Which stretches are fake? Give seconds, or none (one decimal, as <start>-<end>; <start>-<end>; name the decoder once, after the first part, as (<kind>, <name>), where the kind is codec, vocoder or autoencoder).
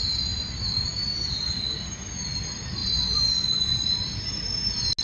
none